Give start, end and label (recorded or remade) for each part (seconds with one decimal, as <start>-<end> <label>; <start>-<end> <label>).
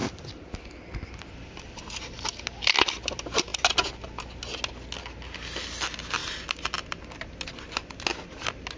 0.0-8.8 recorded